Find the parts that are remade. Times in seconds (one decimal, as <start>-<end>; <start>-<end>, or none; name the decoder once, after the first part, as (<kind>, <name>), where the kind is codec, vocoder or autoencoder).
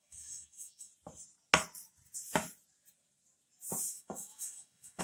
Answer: 0.0-0.9 (autoencoder, DAC-VAE); 3.9-5.0